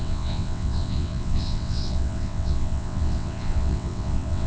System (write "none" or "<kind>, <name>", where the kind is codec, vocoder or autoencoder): vocoder, WaveNeXt